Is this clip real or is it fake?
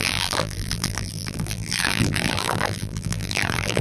fake